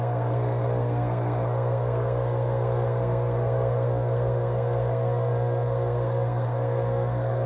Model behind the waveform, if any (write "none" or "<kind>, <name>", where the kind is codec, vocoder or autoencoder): codec, SNAC